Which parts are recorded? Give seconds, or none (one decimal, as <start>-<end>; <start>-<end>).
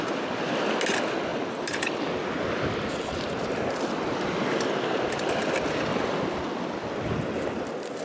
0.0-8.0